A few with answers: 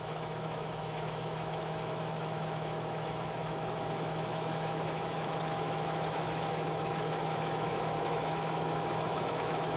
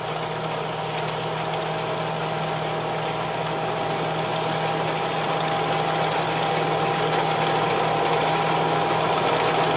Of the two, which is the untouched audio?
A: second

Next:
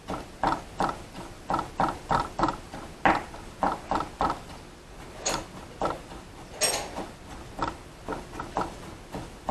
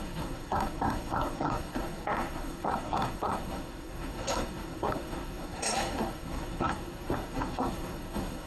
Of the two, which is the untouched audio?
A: first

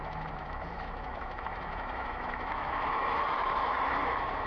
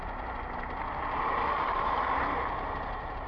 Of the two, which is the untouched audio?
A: second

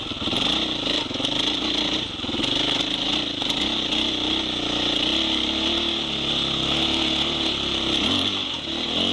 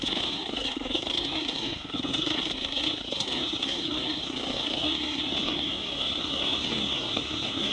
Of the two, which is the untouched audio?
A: first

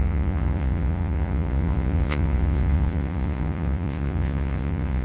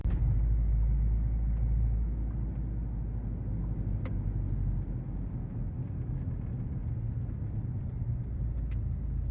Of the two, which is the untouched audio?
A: second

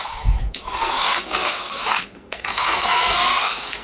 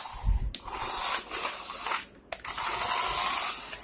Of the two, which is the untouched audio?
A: second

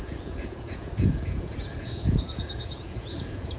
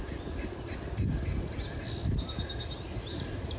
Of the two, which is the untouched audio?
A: second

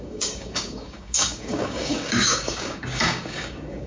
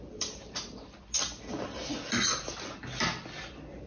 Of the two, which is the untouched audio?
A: second